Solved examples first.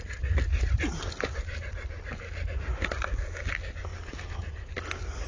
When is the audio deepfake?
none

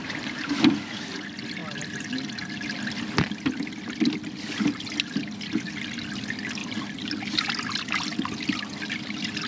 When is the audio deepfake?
none

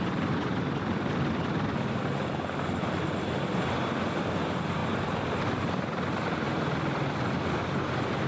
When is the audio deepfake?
none